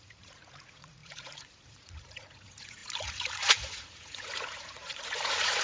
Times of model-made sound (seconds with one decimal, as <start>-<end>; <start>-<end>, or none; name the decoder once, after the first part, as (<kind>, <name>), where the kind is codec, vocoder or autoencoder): 0.0-5.6 (vocoder, Vocos)